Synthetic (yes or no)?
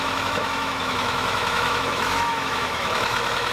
yes